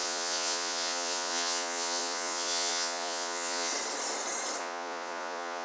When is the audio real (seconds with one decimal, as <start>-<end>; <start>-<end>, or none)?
3.7-4.6